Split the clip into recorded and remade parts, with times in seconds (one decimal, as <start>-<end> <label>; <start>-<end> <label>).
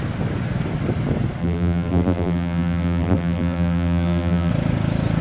0.0-1.4 recorded; 1.4-4.5 remade; 4.5-5.2 recorded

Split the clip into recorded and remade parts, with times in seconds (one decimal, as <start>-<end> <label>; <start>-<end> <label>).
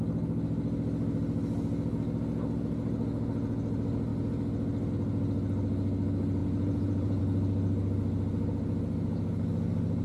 0.0-6.4 recorded; 6.4-7.2 remade; 7.2-10.0 recorded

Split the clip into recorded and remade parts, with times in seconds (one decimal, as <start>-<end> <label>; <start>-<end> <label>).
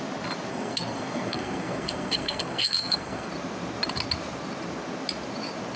0.0-0.5 recorded; 0.5-3.3 remade; 3.3-5.8 recorded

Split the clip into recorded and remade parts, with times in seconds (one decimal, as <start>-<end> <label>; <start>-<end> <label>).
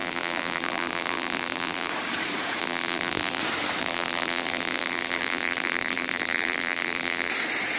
0.0-1.9 remade; 1.9-2.6 recorded; 2.6-3.4 remade; 3.4-3.8 recorded; 3.8-7.3 remade; 7.3-7.8 recorded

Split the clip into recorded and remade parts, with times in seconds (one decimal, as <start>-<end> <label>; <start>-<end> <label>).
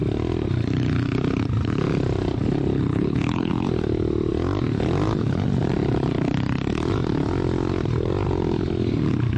0.0-2.9 recorded; 2.9-3.5 remade; 3.5-9.4 recorded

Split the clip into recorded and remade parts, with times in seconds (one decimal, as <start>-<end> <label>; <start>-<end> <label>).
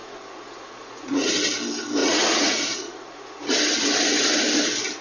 0.0-1.3 remade; 1.3-2.0 recorded; 2.0-3.5 remade; 3.5-5.0 recorded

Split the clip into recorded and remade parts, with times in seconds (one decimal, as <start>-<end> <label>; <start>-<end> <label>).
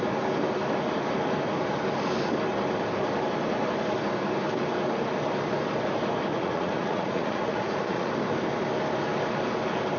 0.0-6.3 recorded; 6.3-8.1 remade; 8.1-10.0 recorded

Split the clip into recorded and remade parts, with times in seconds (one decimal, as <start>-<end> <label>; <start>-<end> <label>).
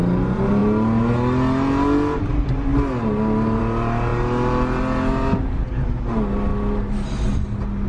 0.0-7.9 recorded